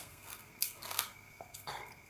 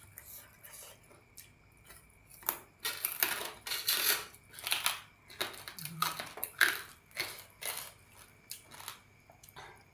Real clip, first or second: second